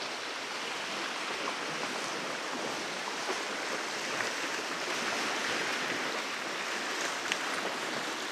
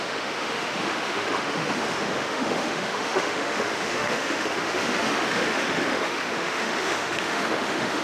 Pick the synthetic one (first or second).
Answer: second